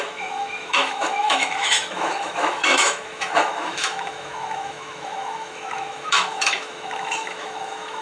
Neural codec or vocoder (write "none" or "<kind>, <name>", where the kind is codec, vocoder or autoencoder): autoencoder, DAC-VAE